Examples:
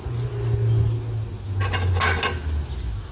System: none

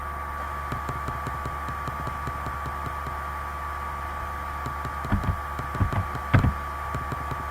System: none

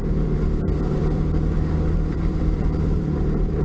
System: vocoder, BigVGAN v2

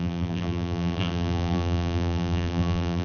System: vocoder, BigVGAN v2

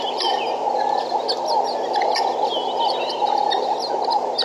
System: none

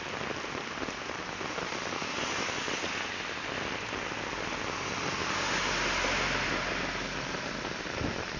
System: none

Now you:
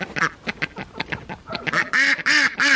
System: none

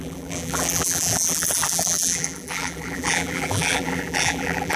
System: vocoder, BigVGAN v2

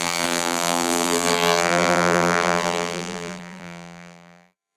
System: vocoder, BigVGAN v2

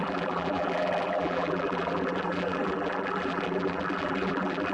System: vocoder, BigVGAN v2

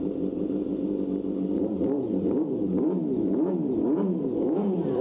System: vocoder, BigVGAN v2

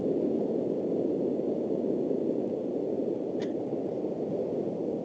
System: none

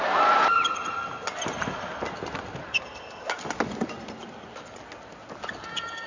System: none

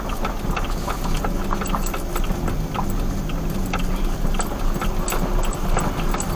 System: none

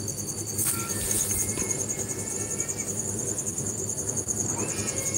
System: none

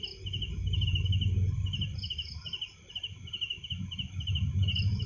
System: none